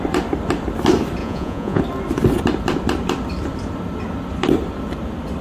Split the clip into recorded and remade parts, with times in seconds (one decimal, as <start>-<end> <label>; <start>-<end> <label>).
0.0-1.2 recorded; 1.2-1.8 remade; 1.8-5.4 recorded